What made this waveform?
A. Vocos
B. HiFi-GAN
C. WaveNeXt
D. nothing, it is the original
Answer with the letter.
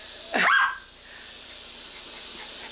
D